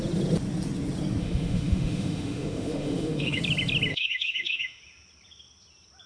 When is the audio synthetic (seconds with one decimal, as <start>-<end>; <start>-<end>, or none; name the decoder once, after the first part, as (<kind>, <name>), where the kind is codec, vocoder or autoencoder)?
1.2-3.4 (autoencoder, DAC-VAE); 3.9-4.8